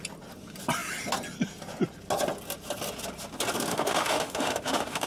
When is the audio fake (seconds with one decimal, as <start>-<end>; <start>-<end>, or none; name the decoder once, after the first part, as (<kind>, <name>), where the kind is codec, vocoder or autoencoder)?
3.7-5.1 (autoencoder, DAC-VAE)